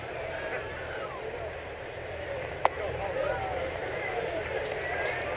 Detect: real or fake fake